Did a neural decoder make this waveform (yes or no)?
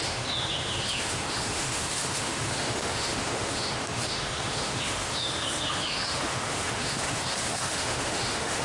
yes